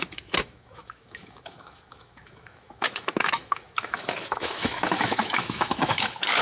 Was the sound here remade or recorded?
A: remade